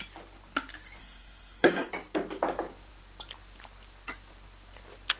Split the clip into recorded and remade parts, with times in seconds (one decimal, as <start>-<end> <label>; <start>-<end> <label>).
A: 0.0-1.0 recorded; 1.0-1.9 remade; 1.9-5.2 recorded